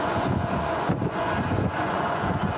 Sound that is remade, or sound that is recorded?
remade